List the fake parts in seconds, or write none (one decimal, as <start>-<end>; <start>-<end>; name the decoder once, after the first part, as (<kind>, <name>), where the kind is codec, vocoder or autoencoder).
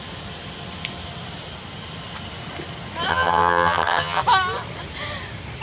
3.1-4.2 (vocoder, HiFi-GAN)